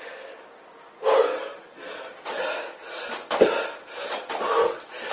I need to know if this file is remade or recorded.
recorded